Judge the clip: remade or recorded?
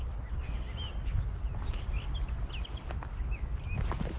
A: recorded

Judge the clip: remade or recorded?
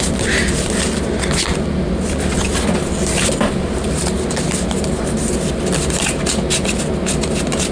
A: recorded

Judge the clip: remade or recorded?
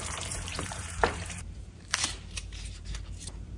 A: remade